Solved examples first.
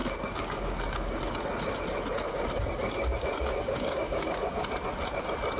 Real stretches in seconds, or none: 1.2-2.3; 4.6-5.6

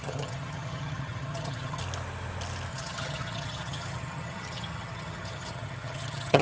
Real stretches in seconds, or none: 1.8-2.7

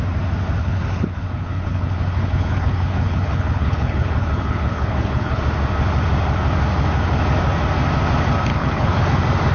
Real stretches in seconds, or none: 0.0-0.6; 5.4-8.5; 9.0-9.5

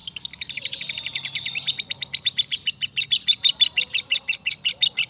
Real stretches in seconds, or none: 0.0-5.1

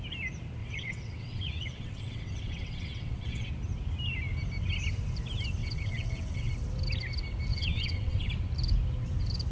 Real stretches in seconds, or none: 0.0-0.6; 3.5-5.6; 6.5-7.5; 8.3-9.5

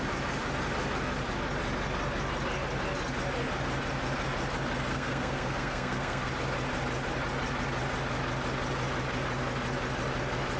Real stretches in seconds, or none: 0.0-4.9; 6.3-10.6

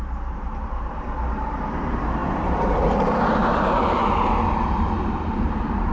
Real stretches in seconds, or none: 4.0-5.1